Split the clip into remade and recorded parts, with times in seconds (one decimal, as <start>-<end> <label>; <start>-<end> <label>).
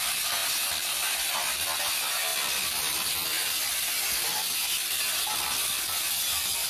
0.0-2.3 remade; 2.3-3.7 recorded; 3.7-6.7 remade